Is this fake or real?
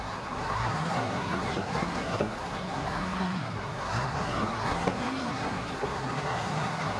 fake